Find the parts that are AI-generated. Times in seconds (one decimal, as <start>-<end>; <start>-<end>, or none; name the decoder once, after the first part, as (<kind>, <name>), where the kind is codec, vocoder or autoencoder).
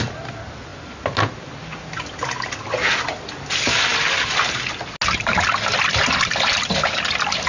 none